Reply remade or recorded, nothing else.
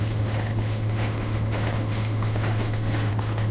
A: remade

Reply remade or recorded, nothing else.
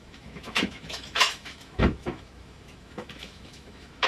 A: remade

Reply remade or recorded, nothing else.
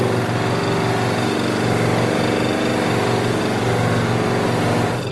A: recorded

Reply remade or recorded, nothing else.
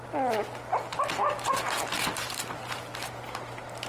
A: recorded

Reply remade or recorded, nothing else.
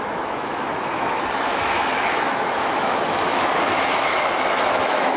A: remade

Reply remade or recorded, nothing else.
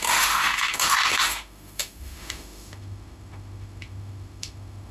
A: remade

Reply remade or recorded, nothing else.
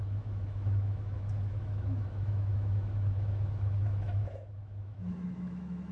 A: remade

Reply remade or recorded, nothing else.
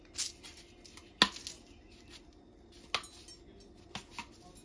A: recorded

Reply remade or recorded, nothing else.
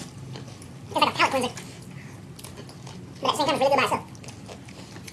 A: recorded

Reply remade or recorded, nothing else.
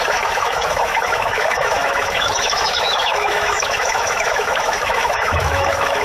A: remade